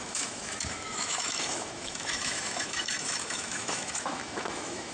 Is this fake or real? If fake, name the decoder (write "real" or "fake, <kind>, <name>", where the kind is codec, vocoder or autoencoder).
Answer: fake, autoencoder, DAC-VAE